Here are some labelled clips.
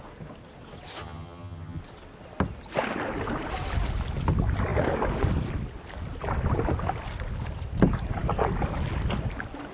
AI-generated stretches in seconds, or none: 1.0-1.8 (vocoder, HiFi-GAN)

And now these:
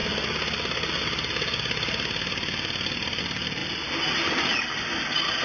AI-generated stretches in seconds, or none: none